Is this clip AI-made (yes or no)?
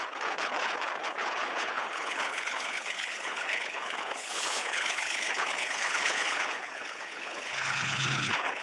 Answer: yes